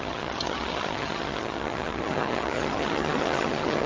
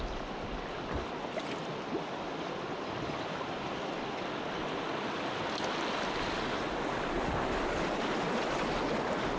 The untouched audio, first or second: second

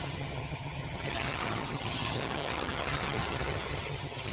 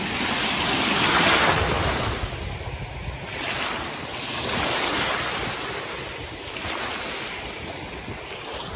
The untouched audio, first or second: second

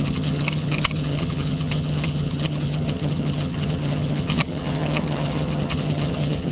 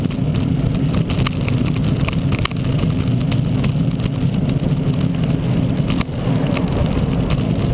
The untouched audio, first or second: second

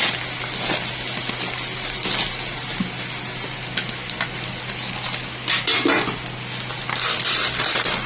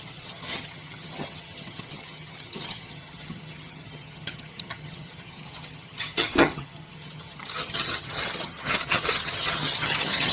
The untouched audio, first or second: first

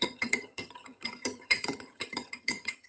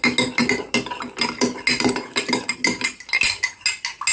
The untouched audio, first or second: second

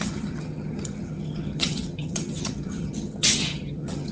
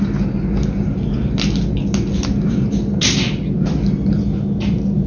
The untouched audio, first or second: second